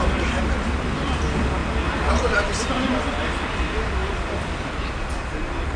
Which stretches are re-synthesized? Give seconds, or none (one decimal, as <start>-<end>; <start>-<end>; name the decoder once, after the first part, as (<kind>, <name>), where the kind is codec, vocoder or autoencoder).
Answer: none